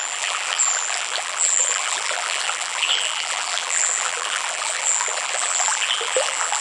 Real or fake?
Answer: fake